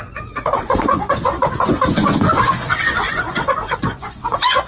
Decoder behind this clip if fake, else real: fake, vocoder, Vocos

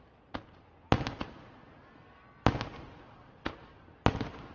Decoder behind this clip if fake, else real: real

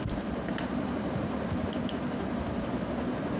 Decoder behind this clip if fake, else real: real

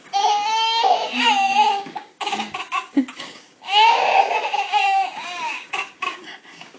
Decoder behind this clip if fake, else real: fake, codec, DAC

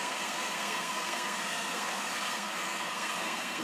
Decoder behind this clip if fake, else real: fake, codec, SNAC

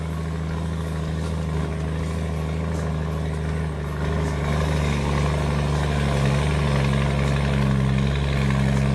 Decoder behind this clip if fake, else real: real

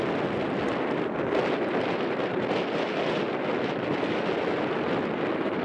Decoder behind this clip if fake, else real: real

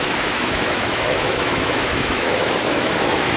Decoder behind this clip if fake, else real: fake, autoencoder, DAC-VAE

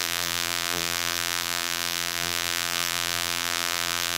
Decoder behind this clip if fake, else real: fake, vocoder, BigVGAN v2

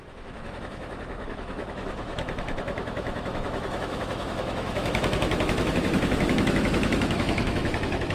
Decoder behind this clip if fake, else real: fake, autoencoder, DAC-VAE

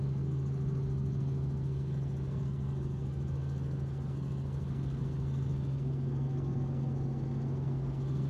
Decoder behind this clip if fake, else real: fake, codec, SNAC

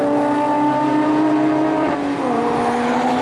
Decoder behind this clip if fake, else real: real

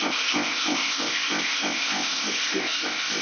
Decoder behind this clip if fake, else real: fake, codec, ZipCodec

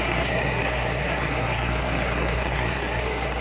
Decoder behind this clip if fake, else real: fake, codec, SNAC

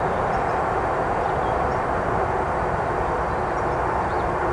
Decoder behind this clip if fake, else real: real